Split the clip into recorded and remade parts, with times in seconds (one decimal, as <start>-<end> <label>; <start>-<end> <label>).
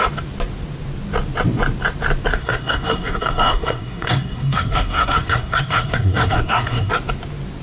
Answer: 0.0-2.4 recorded; 2.4-6.9 remade; 6.9-7.6 recorded